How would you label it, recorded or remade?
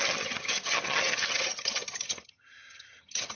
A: remade